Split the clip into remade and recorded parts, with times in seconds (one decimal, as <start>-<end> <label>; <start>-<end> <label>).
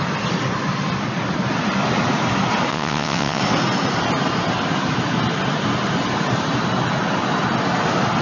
0.0-2.7 recorded; 2.7-3.4 remade; 3.4-8.2 recorded